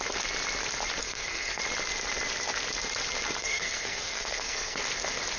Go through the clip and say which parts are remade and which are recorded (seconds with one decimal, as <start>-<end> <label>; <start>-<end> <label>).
0.0-1.0 recorded; 1.0-1.6 remade; 1.6-3.4 recorded; 3.4-4.8 remade; 4.8-5.4 recorded